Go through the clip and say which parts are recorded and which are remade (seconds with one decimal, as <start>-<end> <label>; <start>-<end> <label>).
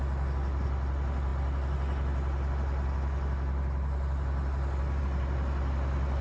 0.0-6.2 recorded